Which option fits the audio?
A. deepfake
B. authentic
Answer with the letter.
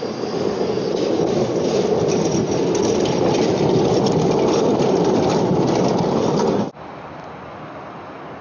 B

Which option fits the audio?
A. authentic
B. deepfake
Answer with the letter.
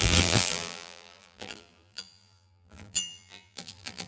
B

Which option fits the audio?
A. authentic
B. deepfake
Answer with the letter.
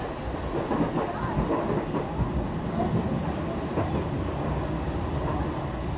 A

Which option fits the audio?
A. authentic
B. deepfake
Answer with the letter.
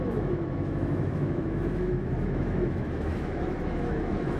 B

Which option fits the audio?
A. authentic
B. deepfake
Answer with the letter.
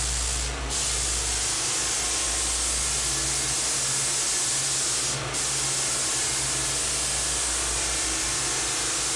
A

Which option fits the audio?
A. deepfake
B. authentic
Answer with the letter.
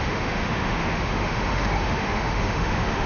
A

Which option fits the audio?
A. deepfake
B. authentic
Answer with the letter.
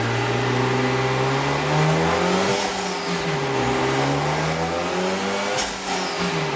B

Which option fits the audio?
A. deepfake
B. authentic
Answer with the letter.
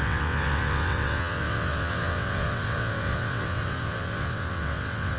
A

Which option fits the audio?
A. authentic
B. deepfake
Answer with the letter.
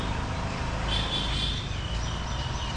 A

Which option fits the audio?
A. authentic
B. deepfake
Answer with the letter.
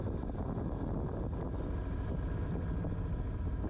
A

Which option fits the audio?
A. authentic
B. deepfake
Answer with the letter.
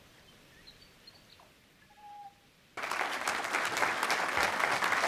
A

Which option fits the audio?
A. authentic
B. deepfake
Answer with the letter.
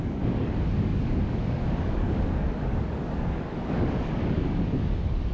B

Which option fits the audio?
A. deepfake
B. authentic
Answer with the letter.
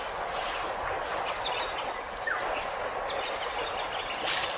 B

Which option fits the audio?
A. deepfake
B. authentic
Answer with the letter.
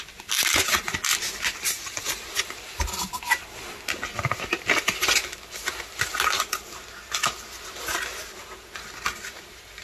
B